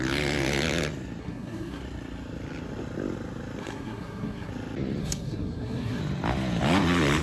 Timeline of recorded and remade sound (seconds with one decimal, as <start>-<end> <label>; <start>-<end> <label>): 0.0-1.2 recorded; 1.2-1.8 remade; 1.8-3.6 recorded; 3.6-4.5 remade; 4.5-5.0 recorded; 5.0-6.0 remade; 6.0-7.2 recorded